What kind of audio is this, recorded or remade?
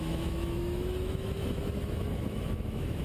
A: remade